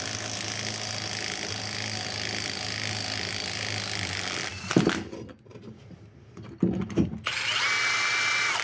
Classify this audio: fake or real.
real